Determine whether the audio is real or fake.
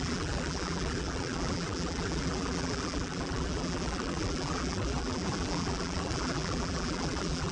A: fake